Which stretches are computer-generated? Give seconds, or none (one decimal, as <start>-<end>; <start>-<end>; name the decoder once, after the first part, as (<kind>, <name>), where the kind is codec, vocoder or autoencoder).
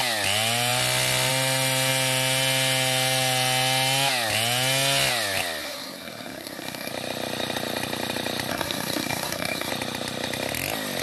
5.6-6.9 (codec, SNAC); 8.5-9.7